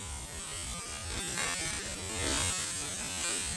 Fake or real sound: real